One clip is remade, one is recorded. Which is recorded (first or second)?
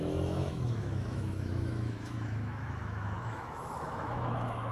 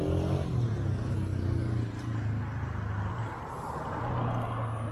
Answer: second